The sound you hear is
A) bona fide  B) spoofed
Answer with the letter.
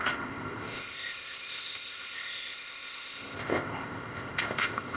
B